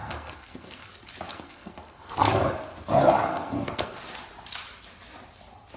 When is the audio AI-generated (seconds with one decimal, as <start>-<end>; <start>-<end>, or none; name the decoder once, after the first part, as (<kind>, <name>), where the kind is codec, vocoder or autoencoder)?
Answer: 0.0-0.9 (codec, SNAC); 1.3-2.1; 3.3-4.0